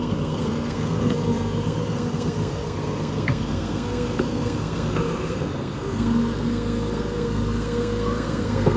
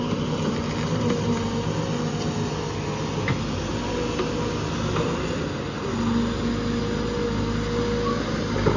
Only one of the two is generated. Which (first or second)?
first